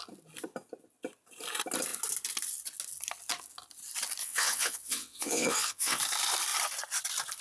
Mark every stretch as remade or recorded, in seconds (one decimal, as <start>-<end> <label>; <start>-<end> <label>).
0.0-4.2 recorded; 4.2-6.0 remade; 6.0-7.4 recorded